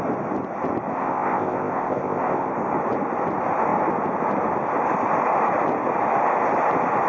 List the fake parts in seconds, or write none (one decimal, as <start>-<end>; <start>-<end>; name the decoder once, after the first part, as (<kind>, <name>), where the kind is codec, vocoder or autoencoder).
0.9-2.5 (codec, ZipCodec)

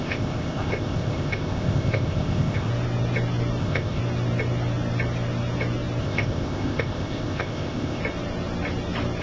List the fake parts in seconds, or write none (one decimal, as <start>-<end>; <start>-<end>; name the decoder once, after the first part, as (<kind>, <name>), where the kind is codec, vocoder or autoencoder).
0.0-2.7 (codec, ZipCodec); 3.6-4.0; 6.0-8.0

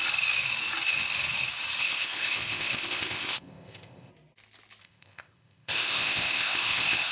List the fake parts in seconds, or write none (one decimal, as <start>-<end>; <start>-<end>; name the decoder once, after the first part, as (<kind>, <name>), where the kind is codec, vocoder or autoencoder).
1.8-4.1 (codec, ZipCodec); 4.8-7.1

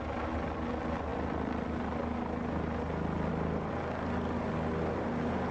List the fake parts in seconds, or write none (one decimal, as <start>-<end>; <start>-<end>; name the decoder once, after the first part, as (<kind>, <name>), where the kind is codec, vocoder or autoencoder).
none

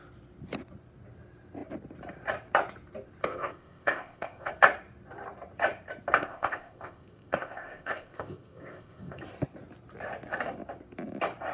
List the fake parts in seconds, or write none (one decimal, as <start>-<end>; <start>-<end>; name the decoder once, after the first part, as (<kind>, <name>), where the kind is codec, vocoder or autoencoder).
3.2-4.5 (codec, ZipCodec); 6.2-9.2